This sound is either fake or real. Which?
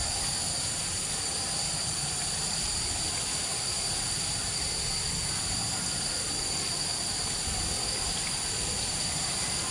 real